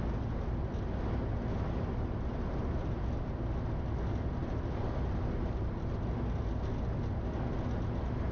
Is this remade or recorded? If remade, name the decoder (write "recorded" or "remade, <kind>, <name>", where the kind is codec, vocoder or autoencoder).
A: recorded